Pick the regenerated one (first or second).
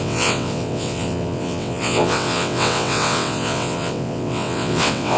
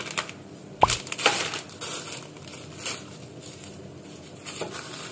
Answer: first